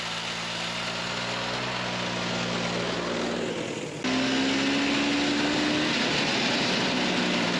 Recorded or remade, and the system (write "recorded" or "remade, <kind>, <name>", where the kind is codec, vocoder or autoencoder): recorded